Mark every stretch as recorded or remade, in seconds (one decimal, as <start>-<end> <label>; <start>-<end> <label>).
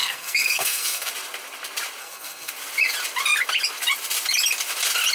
0.0-1.1 remade; 1.1-2.0 recorded; 2.0-2.5 remade; 2.5-5.1 recorded